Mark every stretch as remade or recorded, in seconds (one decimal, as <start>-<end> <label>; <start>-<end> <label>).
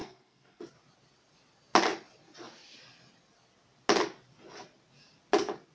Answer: 0.0-0.6 remade; 0.6-5.7 recorded